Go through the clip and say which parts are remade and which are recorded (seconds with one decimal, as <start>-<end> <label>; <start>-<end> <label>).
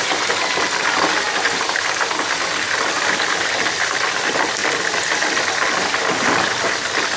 0.0-7.2 recorded